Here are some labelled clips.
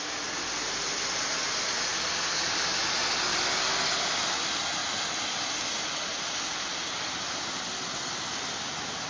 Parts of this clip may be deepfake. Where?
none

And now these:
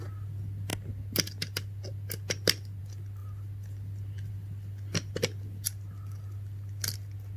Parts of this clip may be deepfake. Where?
none

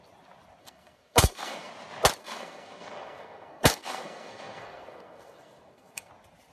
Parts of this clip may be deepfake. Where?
0.6-1.7 (codec, SNAC); 2.2-6.1